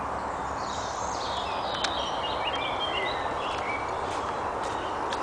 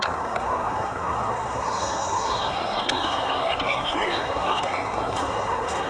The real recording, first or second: first